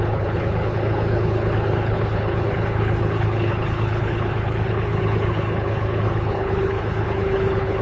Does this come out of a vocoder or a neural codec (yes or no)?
yes